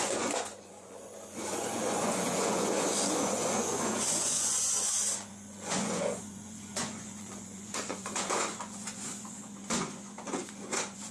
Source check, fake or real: fake